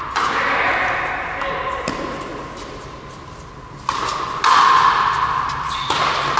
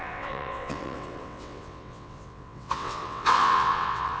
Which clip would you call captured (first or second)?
first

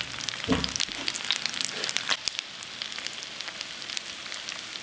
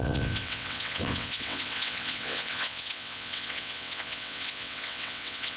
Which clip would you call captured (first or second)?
first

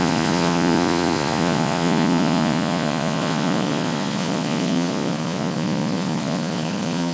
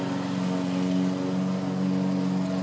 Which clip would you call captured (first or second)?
second